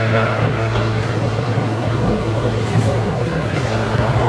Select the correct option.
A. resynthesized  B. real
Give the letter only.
A